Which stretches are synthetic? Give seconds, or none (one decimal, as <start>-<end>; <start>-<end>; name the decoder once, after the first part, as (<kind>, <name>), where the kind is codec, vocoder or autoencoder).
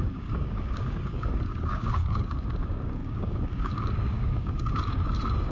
0.0-5.5 (codec, DAC)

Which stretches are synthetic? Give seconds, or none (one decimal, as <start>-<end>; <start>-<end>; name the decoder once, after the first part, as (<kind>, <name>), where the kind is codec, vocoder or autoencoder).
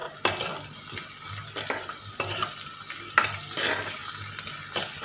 3.0-4.0 (vocoder, BigVGAN v2)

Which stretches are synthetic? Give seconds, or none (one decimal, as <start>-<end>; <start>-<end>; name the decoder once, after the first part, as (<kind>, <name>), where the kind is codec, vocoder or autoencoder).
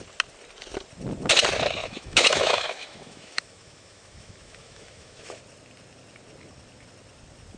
1.8-5.4 (autoencoder, DAC-VAE)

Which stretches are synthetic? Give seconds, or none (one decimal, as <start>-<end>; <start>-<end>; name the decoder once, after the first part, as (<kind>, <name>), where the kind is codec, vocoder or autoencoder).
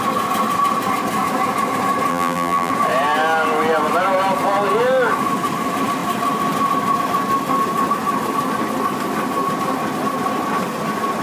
2.1-2.7 (vocoder, BigVGAN v2)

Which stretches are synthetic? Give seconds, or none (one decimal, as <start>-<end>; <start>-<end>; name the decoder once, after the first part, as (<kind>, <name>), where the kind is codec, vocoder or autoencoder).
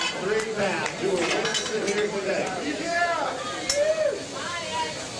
1.5-3.3 (vocoder, BigVGAN v2)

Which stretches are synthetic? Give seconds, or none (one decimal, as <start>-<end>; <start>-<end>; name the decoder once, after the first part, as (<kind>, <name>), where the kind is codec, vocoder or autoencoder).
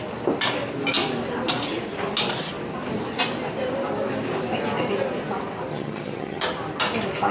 5.7-6.4 (vocoder, HiFi-GAN)